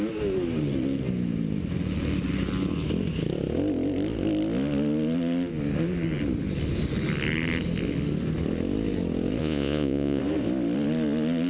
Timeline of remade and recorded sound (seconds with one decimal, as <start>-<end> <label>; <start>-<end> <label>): 0.0-9.4 recorded; 9.4-10.2 remade; 10.2-11.5 recorded